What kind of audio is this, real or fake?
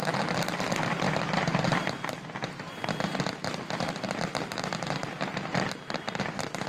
real